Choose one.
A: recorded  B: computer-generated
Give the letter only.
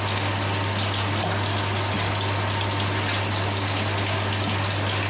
A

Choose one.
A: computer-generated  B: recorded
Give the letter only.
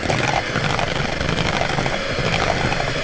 B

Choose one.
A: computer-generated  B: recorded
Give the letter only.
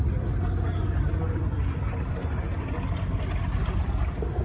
B